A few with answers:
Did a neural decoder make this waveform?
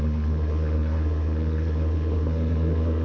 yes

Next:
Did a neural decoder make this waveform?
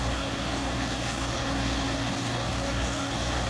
yes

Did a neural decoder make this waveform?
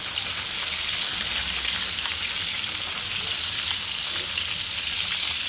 no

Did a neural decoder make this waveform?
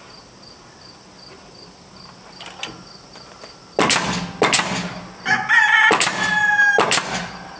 no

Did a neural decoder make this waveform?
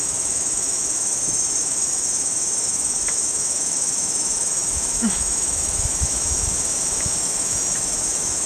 yes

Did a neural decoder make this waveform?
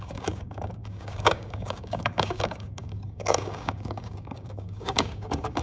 yes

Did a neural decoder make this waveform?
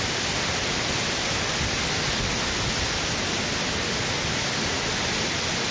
no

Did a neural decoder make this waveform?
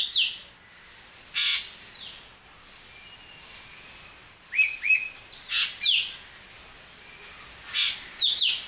no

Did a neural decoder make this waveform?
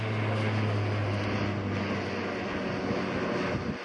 no